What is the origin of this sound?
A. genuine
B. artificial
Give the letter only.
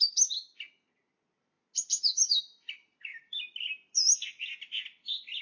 A